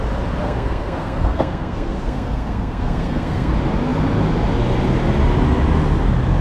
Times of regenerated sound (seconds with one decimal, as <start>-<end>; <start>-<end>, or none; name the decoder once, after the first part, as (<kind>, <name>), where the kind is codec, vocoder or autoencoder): 0.4-3.5 (codec, SNAC)